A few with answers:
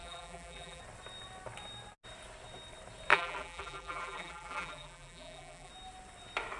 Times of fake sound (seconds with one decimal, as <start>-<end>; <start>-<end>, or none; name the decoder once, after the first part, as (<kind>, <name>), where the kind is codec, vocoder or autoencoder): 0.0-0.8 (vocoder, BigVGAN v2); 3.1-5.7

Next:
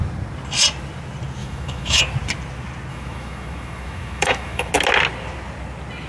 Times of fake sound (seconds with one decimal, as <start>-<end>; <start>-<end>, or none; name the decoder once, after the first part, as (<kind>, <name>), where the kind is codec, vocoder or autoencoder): 1.4-2.0 (autoencoder, DAC-VAE); 2.9-4.7

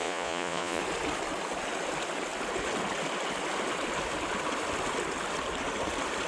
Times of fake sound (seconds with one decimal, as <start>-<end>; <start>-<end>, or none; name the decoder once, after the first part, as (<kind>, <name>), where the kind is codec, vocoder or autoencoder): 0.0-0.8 (vocoder, Vocos)

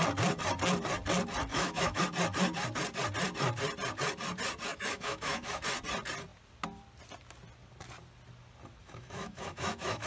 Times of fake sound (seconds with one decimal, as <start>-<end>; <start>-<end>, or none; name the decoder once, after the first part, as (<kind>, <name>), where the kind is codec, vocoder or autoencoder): 1.5-2.0 (autoencoder, DAC-VAE); 4.7-5.6; 8.8-10.1

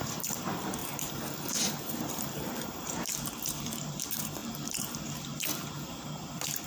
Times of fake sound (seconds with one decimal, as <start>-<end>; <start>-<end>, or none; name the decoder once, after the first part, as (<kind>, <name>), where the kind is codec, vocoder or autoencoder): 0.0-6.7 (vocoder, BigVGAN v2)

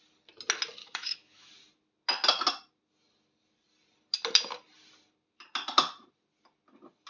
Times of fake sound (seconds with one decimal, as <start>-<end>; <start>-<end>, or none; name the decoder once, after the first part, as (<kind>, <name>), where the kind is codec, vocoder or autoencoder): 0.8-1.5 (autoencoder, DAC-VAE)

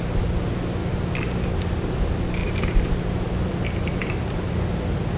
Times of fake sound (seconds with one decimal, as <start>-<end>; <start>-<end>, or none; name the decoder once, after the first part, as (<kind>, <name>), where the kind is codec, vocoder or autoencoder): 0.8-1.4 (vocoder, BigVGAN v2); 2.4-3.5; 4.0-4.5